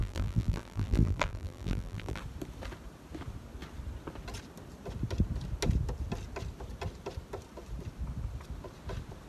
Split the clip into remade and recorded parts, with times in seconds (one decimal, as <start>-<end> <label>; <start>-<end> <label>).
0.0-2.2 remade; 2.2-9.3 recorded